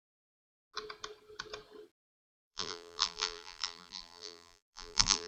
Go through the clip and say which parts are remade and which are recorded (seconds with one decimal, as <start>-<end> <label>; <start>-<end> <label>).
0.0-2.4 recorded; 2.4-5.3 remade